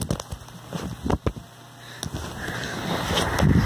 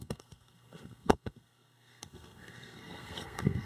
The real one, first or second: first